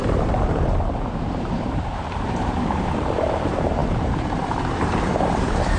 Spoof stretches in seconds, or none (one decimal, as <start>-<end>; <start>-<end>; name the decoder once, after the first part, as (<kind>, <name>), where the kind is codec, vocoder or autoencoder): 0.0-5.8 (vocoder, BigVGAN v2)